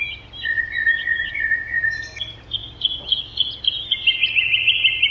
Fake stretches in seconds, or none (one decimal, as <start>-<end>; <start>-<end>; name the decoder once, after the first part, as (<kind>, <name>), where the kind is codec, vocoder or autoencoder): none